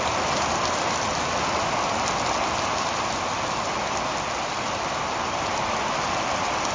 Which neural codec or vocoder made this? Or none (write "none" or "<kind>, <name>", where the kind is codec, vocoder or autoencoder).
none